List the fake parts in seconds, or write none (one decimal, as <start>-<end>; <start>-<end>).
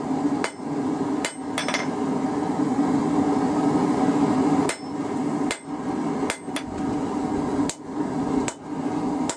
none